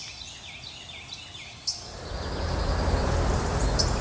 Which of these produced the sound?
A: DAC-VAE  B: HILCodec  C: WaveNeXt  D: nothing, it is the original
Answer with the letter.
D